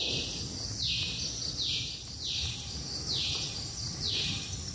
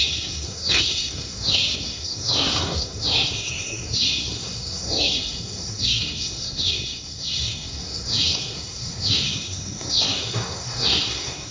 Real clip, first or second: first